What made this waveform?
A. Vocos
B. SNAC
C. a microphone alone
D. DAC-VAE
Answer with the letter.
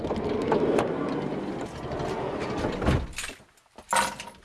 C